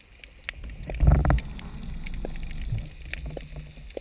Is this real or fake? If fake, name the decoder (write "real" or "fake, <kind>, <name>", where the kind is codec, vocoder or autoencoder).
real